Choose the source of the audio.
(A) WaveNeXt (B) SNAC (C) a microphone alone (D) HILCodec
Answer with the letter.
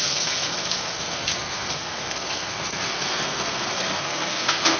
B